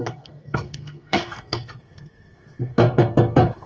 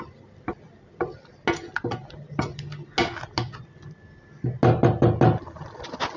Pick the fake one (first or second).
first